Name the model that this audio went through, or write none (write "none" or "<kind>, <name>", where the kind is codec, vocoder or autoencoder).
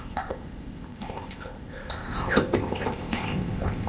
codec, ZipCodec